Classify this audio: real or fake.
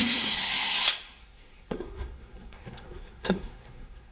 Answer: fake